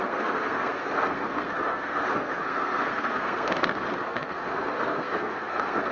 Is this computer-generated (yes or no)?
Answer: yes